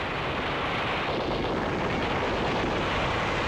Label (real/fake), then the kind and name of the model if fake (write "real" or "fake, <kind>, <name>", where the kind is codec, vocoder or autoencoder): real